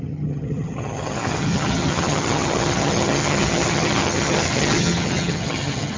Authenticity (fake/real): fake